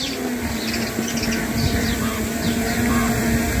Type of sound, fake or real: fake